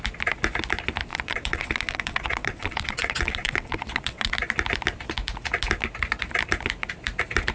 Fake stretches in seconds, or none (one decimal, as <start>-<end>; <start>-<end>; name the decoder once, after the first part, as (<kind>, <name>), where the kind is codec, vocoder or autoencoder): 1.1-4.3 (vocoder, WaveNeXt)